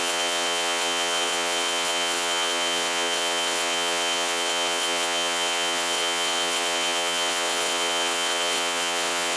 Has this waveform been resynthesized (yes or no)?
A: yes